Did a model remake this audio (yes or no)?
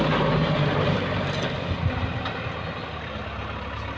no